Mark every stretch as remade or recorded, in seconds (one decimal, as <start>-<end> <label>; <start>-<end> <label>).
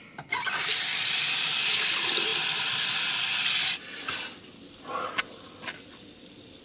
0.0-6.6 recorded